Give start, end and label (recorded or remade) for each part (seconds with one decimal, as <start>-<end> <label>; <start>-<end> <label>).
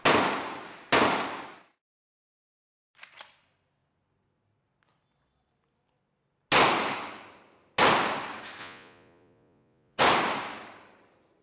0.0-8.6 recorded; 8.6-10.0 remade; 10.0-11.4 recorded